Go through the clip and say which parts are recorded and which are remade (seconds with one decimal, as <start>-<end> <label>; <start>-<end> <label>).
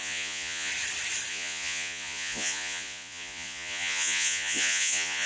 0.0-0.7 remade; 0.7-1.3 recorded; 1.3-5.3 remade